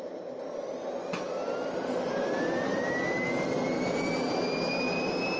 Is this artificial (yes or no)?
no